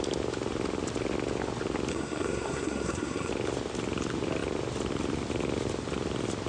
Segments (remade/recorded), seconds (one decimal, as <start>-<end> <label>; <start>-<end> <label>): 0.0-1.9 recorded; 1.9-3.3 remade; 3.3-6.5 recorded